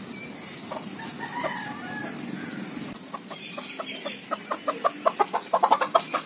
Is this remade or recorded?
recorded